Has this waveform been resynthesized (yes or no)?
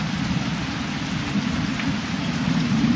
yes